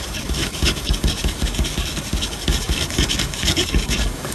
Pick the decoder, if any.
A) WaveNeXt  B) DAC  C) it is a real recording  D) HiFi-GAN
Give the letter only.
B